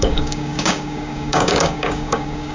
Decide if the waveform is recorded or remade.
remade